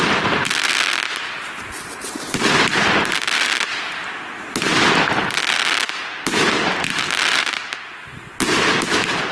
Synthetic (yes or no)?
no